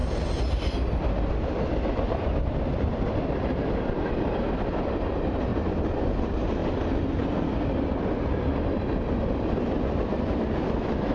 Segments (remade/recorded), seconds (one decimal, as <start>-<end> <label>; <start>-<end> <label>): 0.0-1.3 recorded; 1.3-5.5 remade; 5.5-6.0 recorded; 6.0-11.1 remade